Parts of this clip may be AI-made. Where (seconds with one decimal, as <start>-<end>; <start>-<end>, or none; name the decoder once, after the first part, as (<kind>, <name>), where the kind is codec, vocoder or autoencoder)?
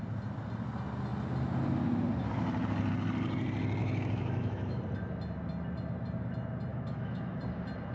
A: 3.8-4.8 (autoencoder, DAC-VAE); 6.7-7.4